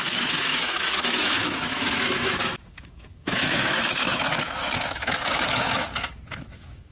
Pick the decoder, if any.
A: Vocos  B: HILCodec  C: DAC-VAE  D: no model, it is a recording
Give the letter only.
C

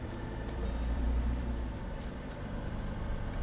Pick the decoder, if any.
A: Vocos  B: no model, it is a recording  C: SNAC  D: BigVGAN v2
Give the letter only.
D